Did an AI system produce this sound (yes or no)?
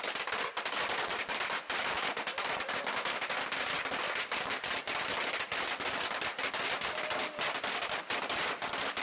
no